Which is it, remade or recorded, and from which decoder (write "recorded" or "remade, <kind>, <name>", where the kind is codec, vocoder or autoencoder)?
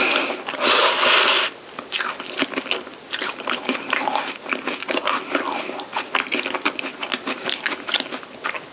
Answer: recorded